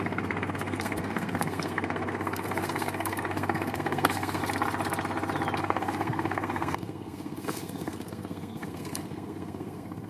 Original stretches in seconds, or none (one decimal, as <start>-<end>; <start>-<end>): 4.4-5.6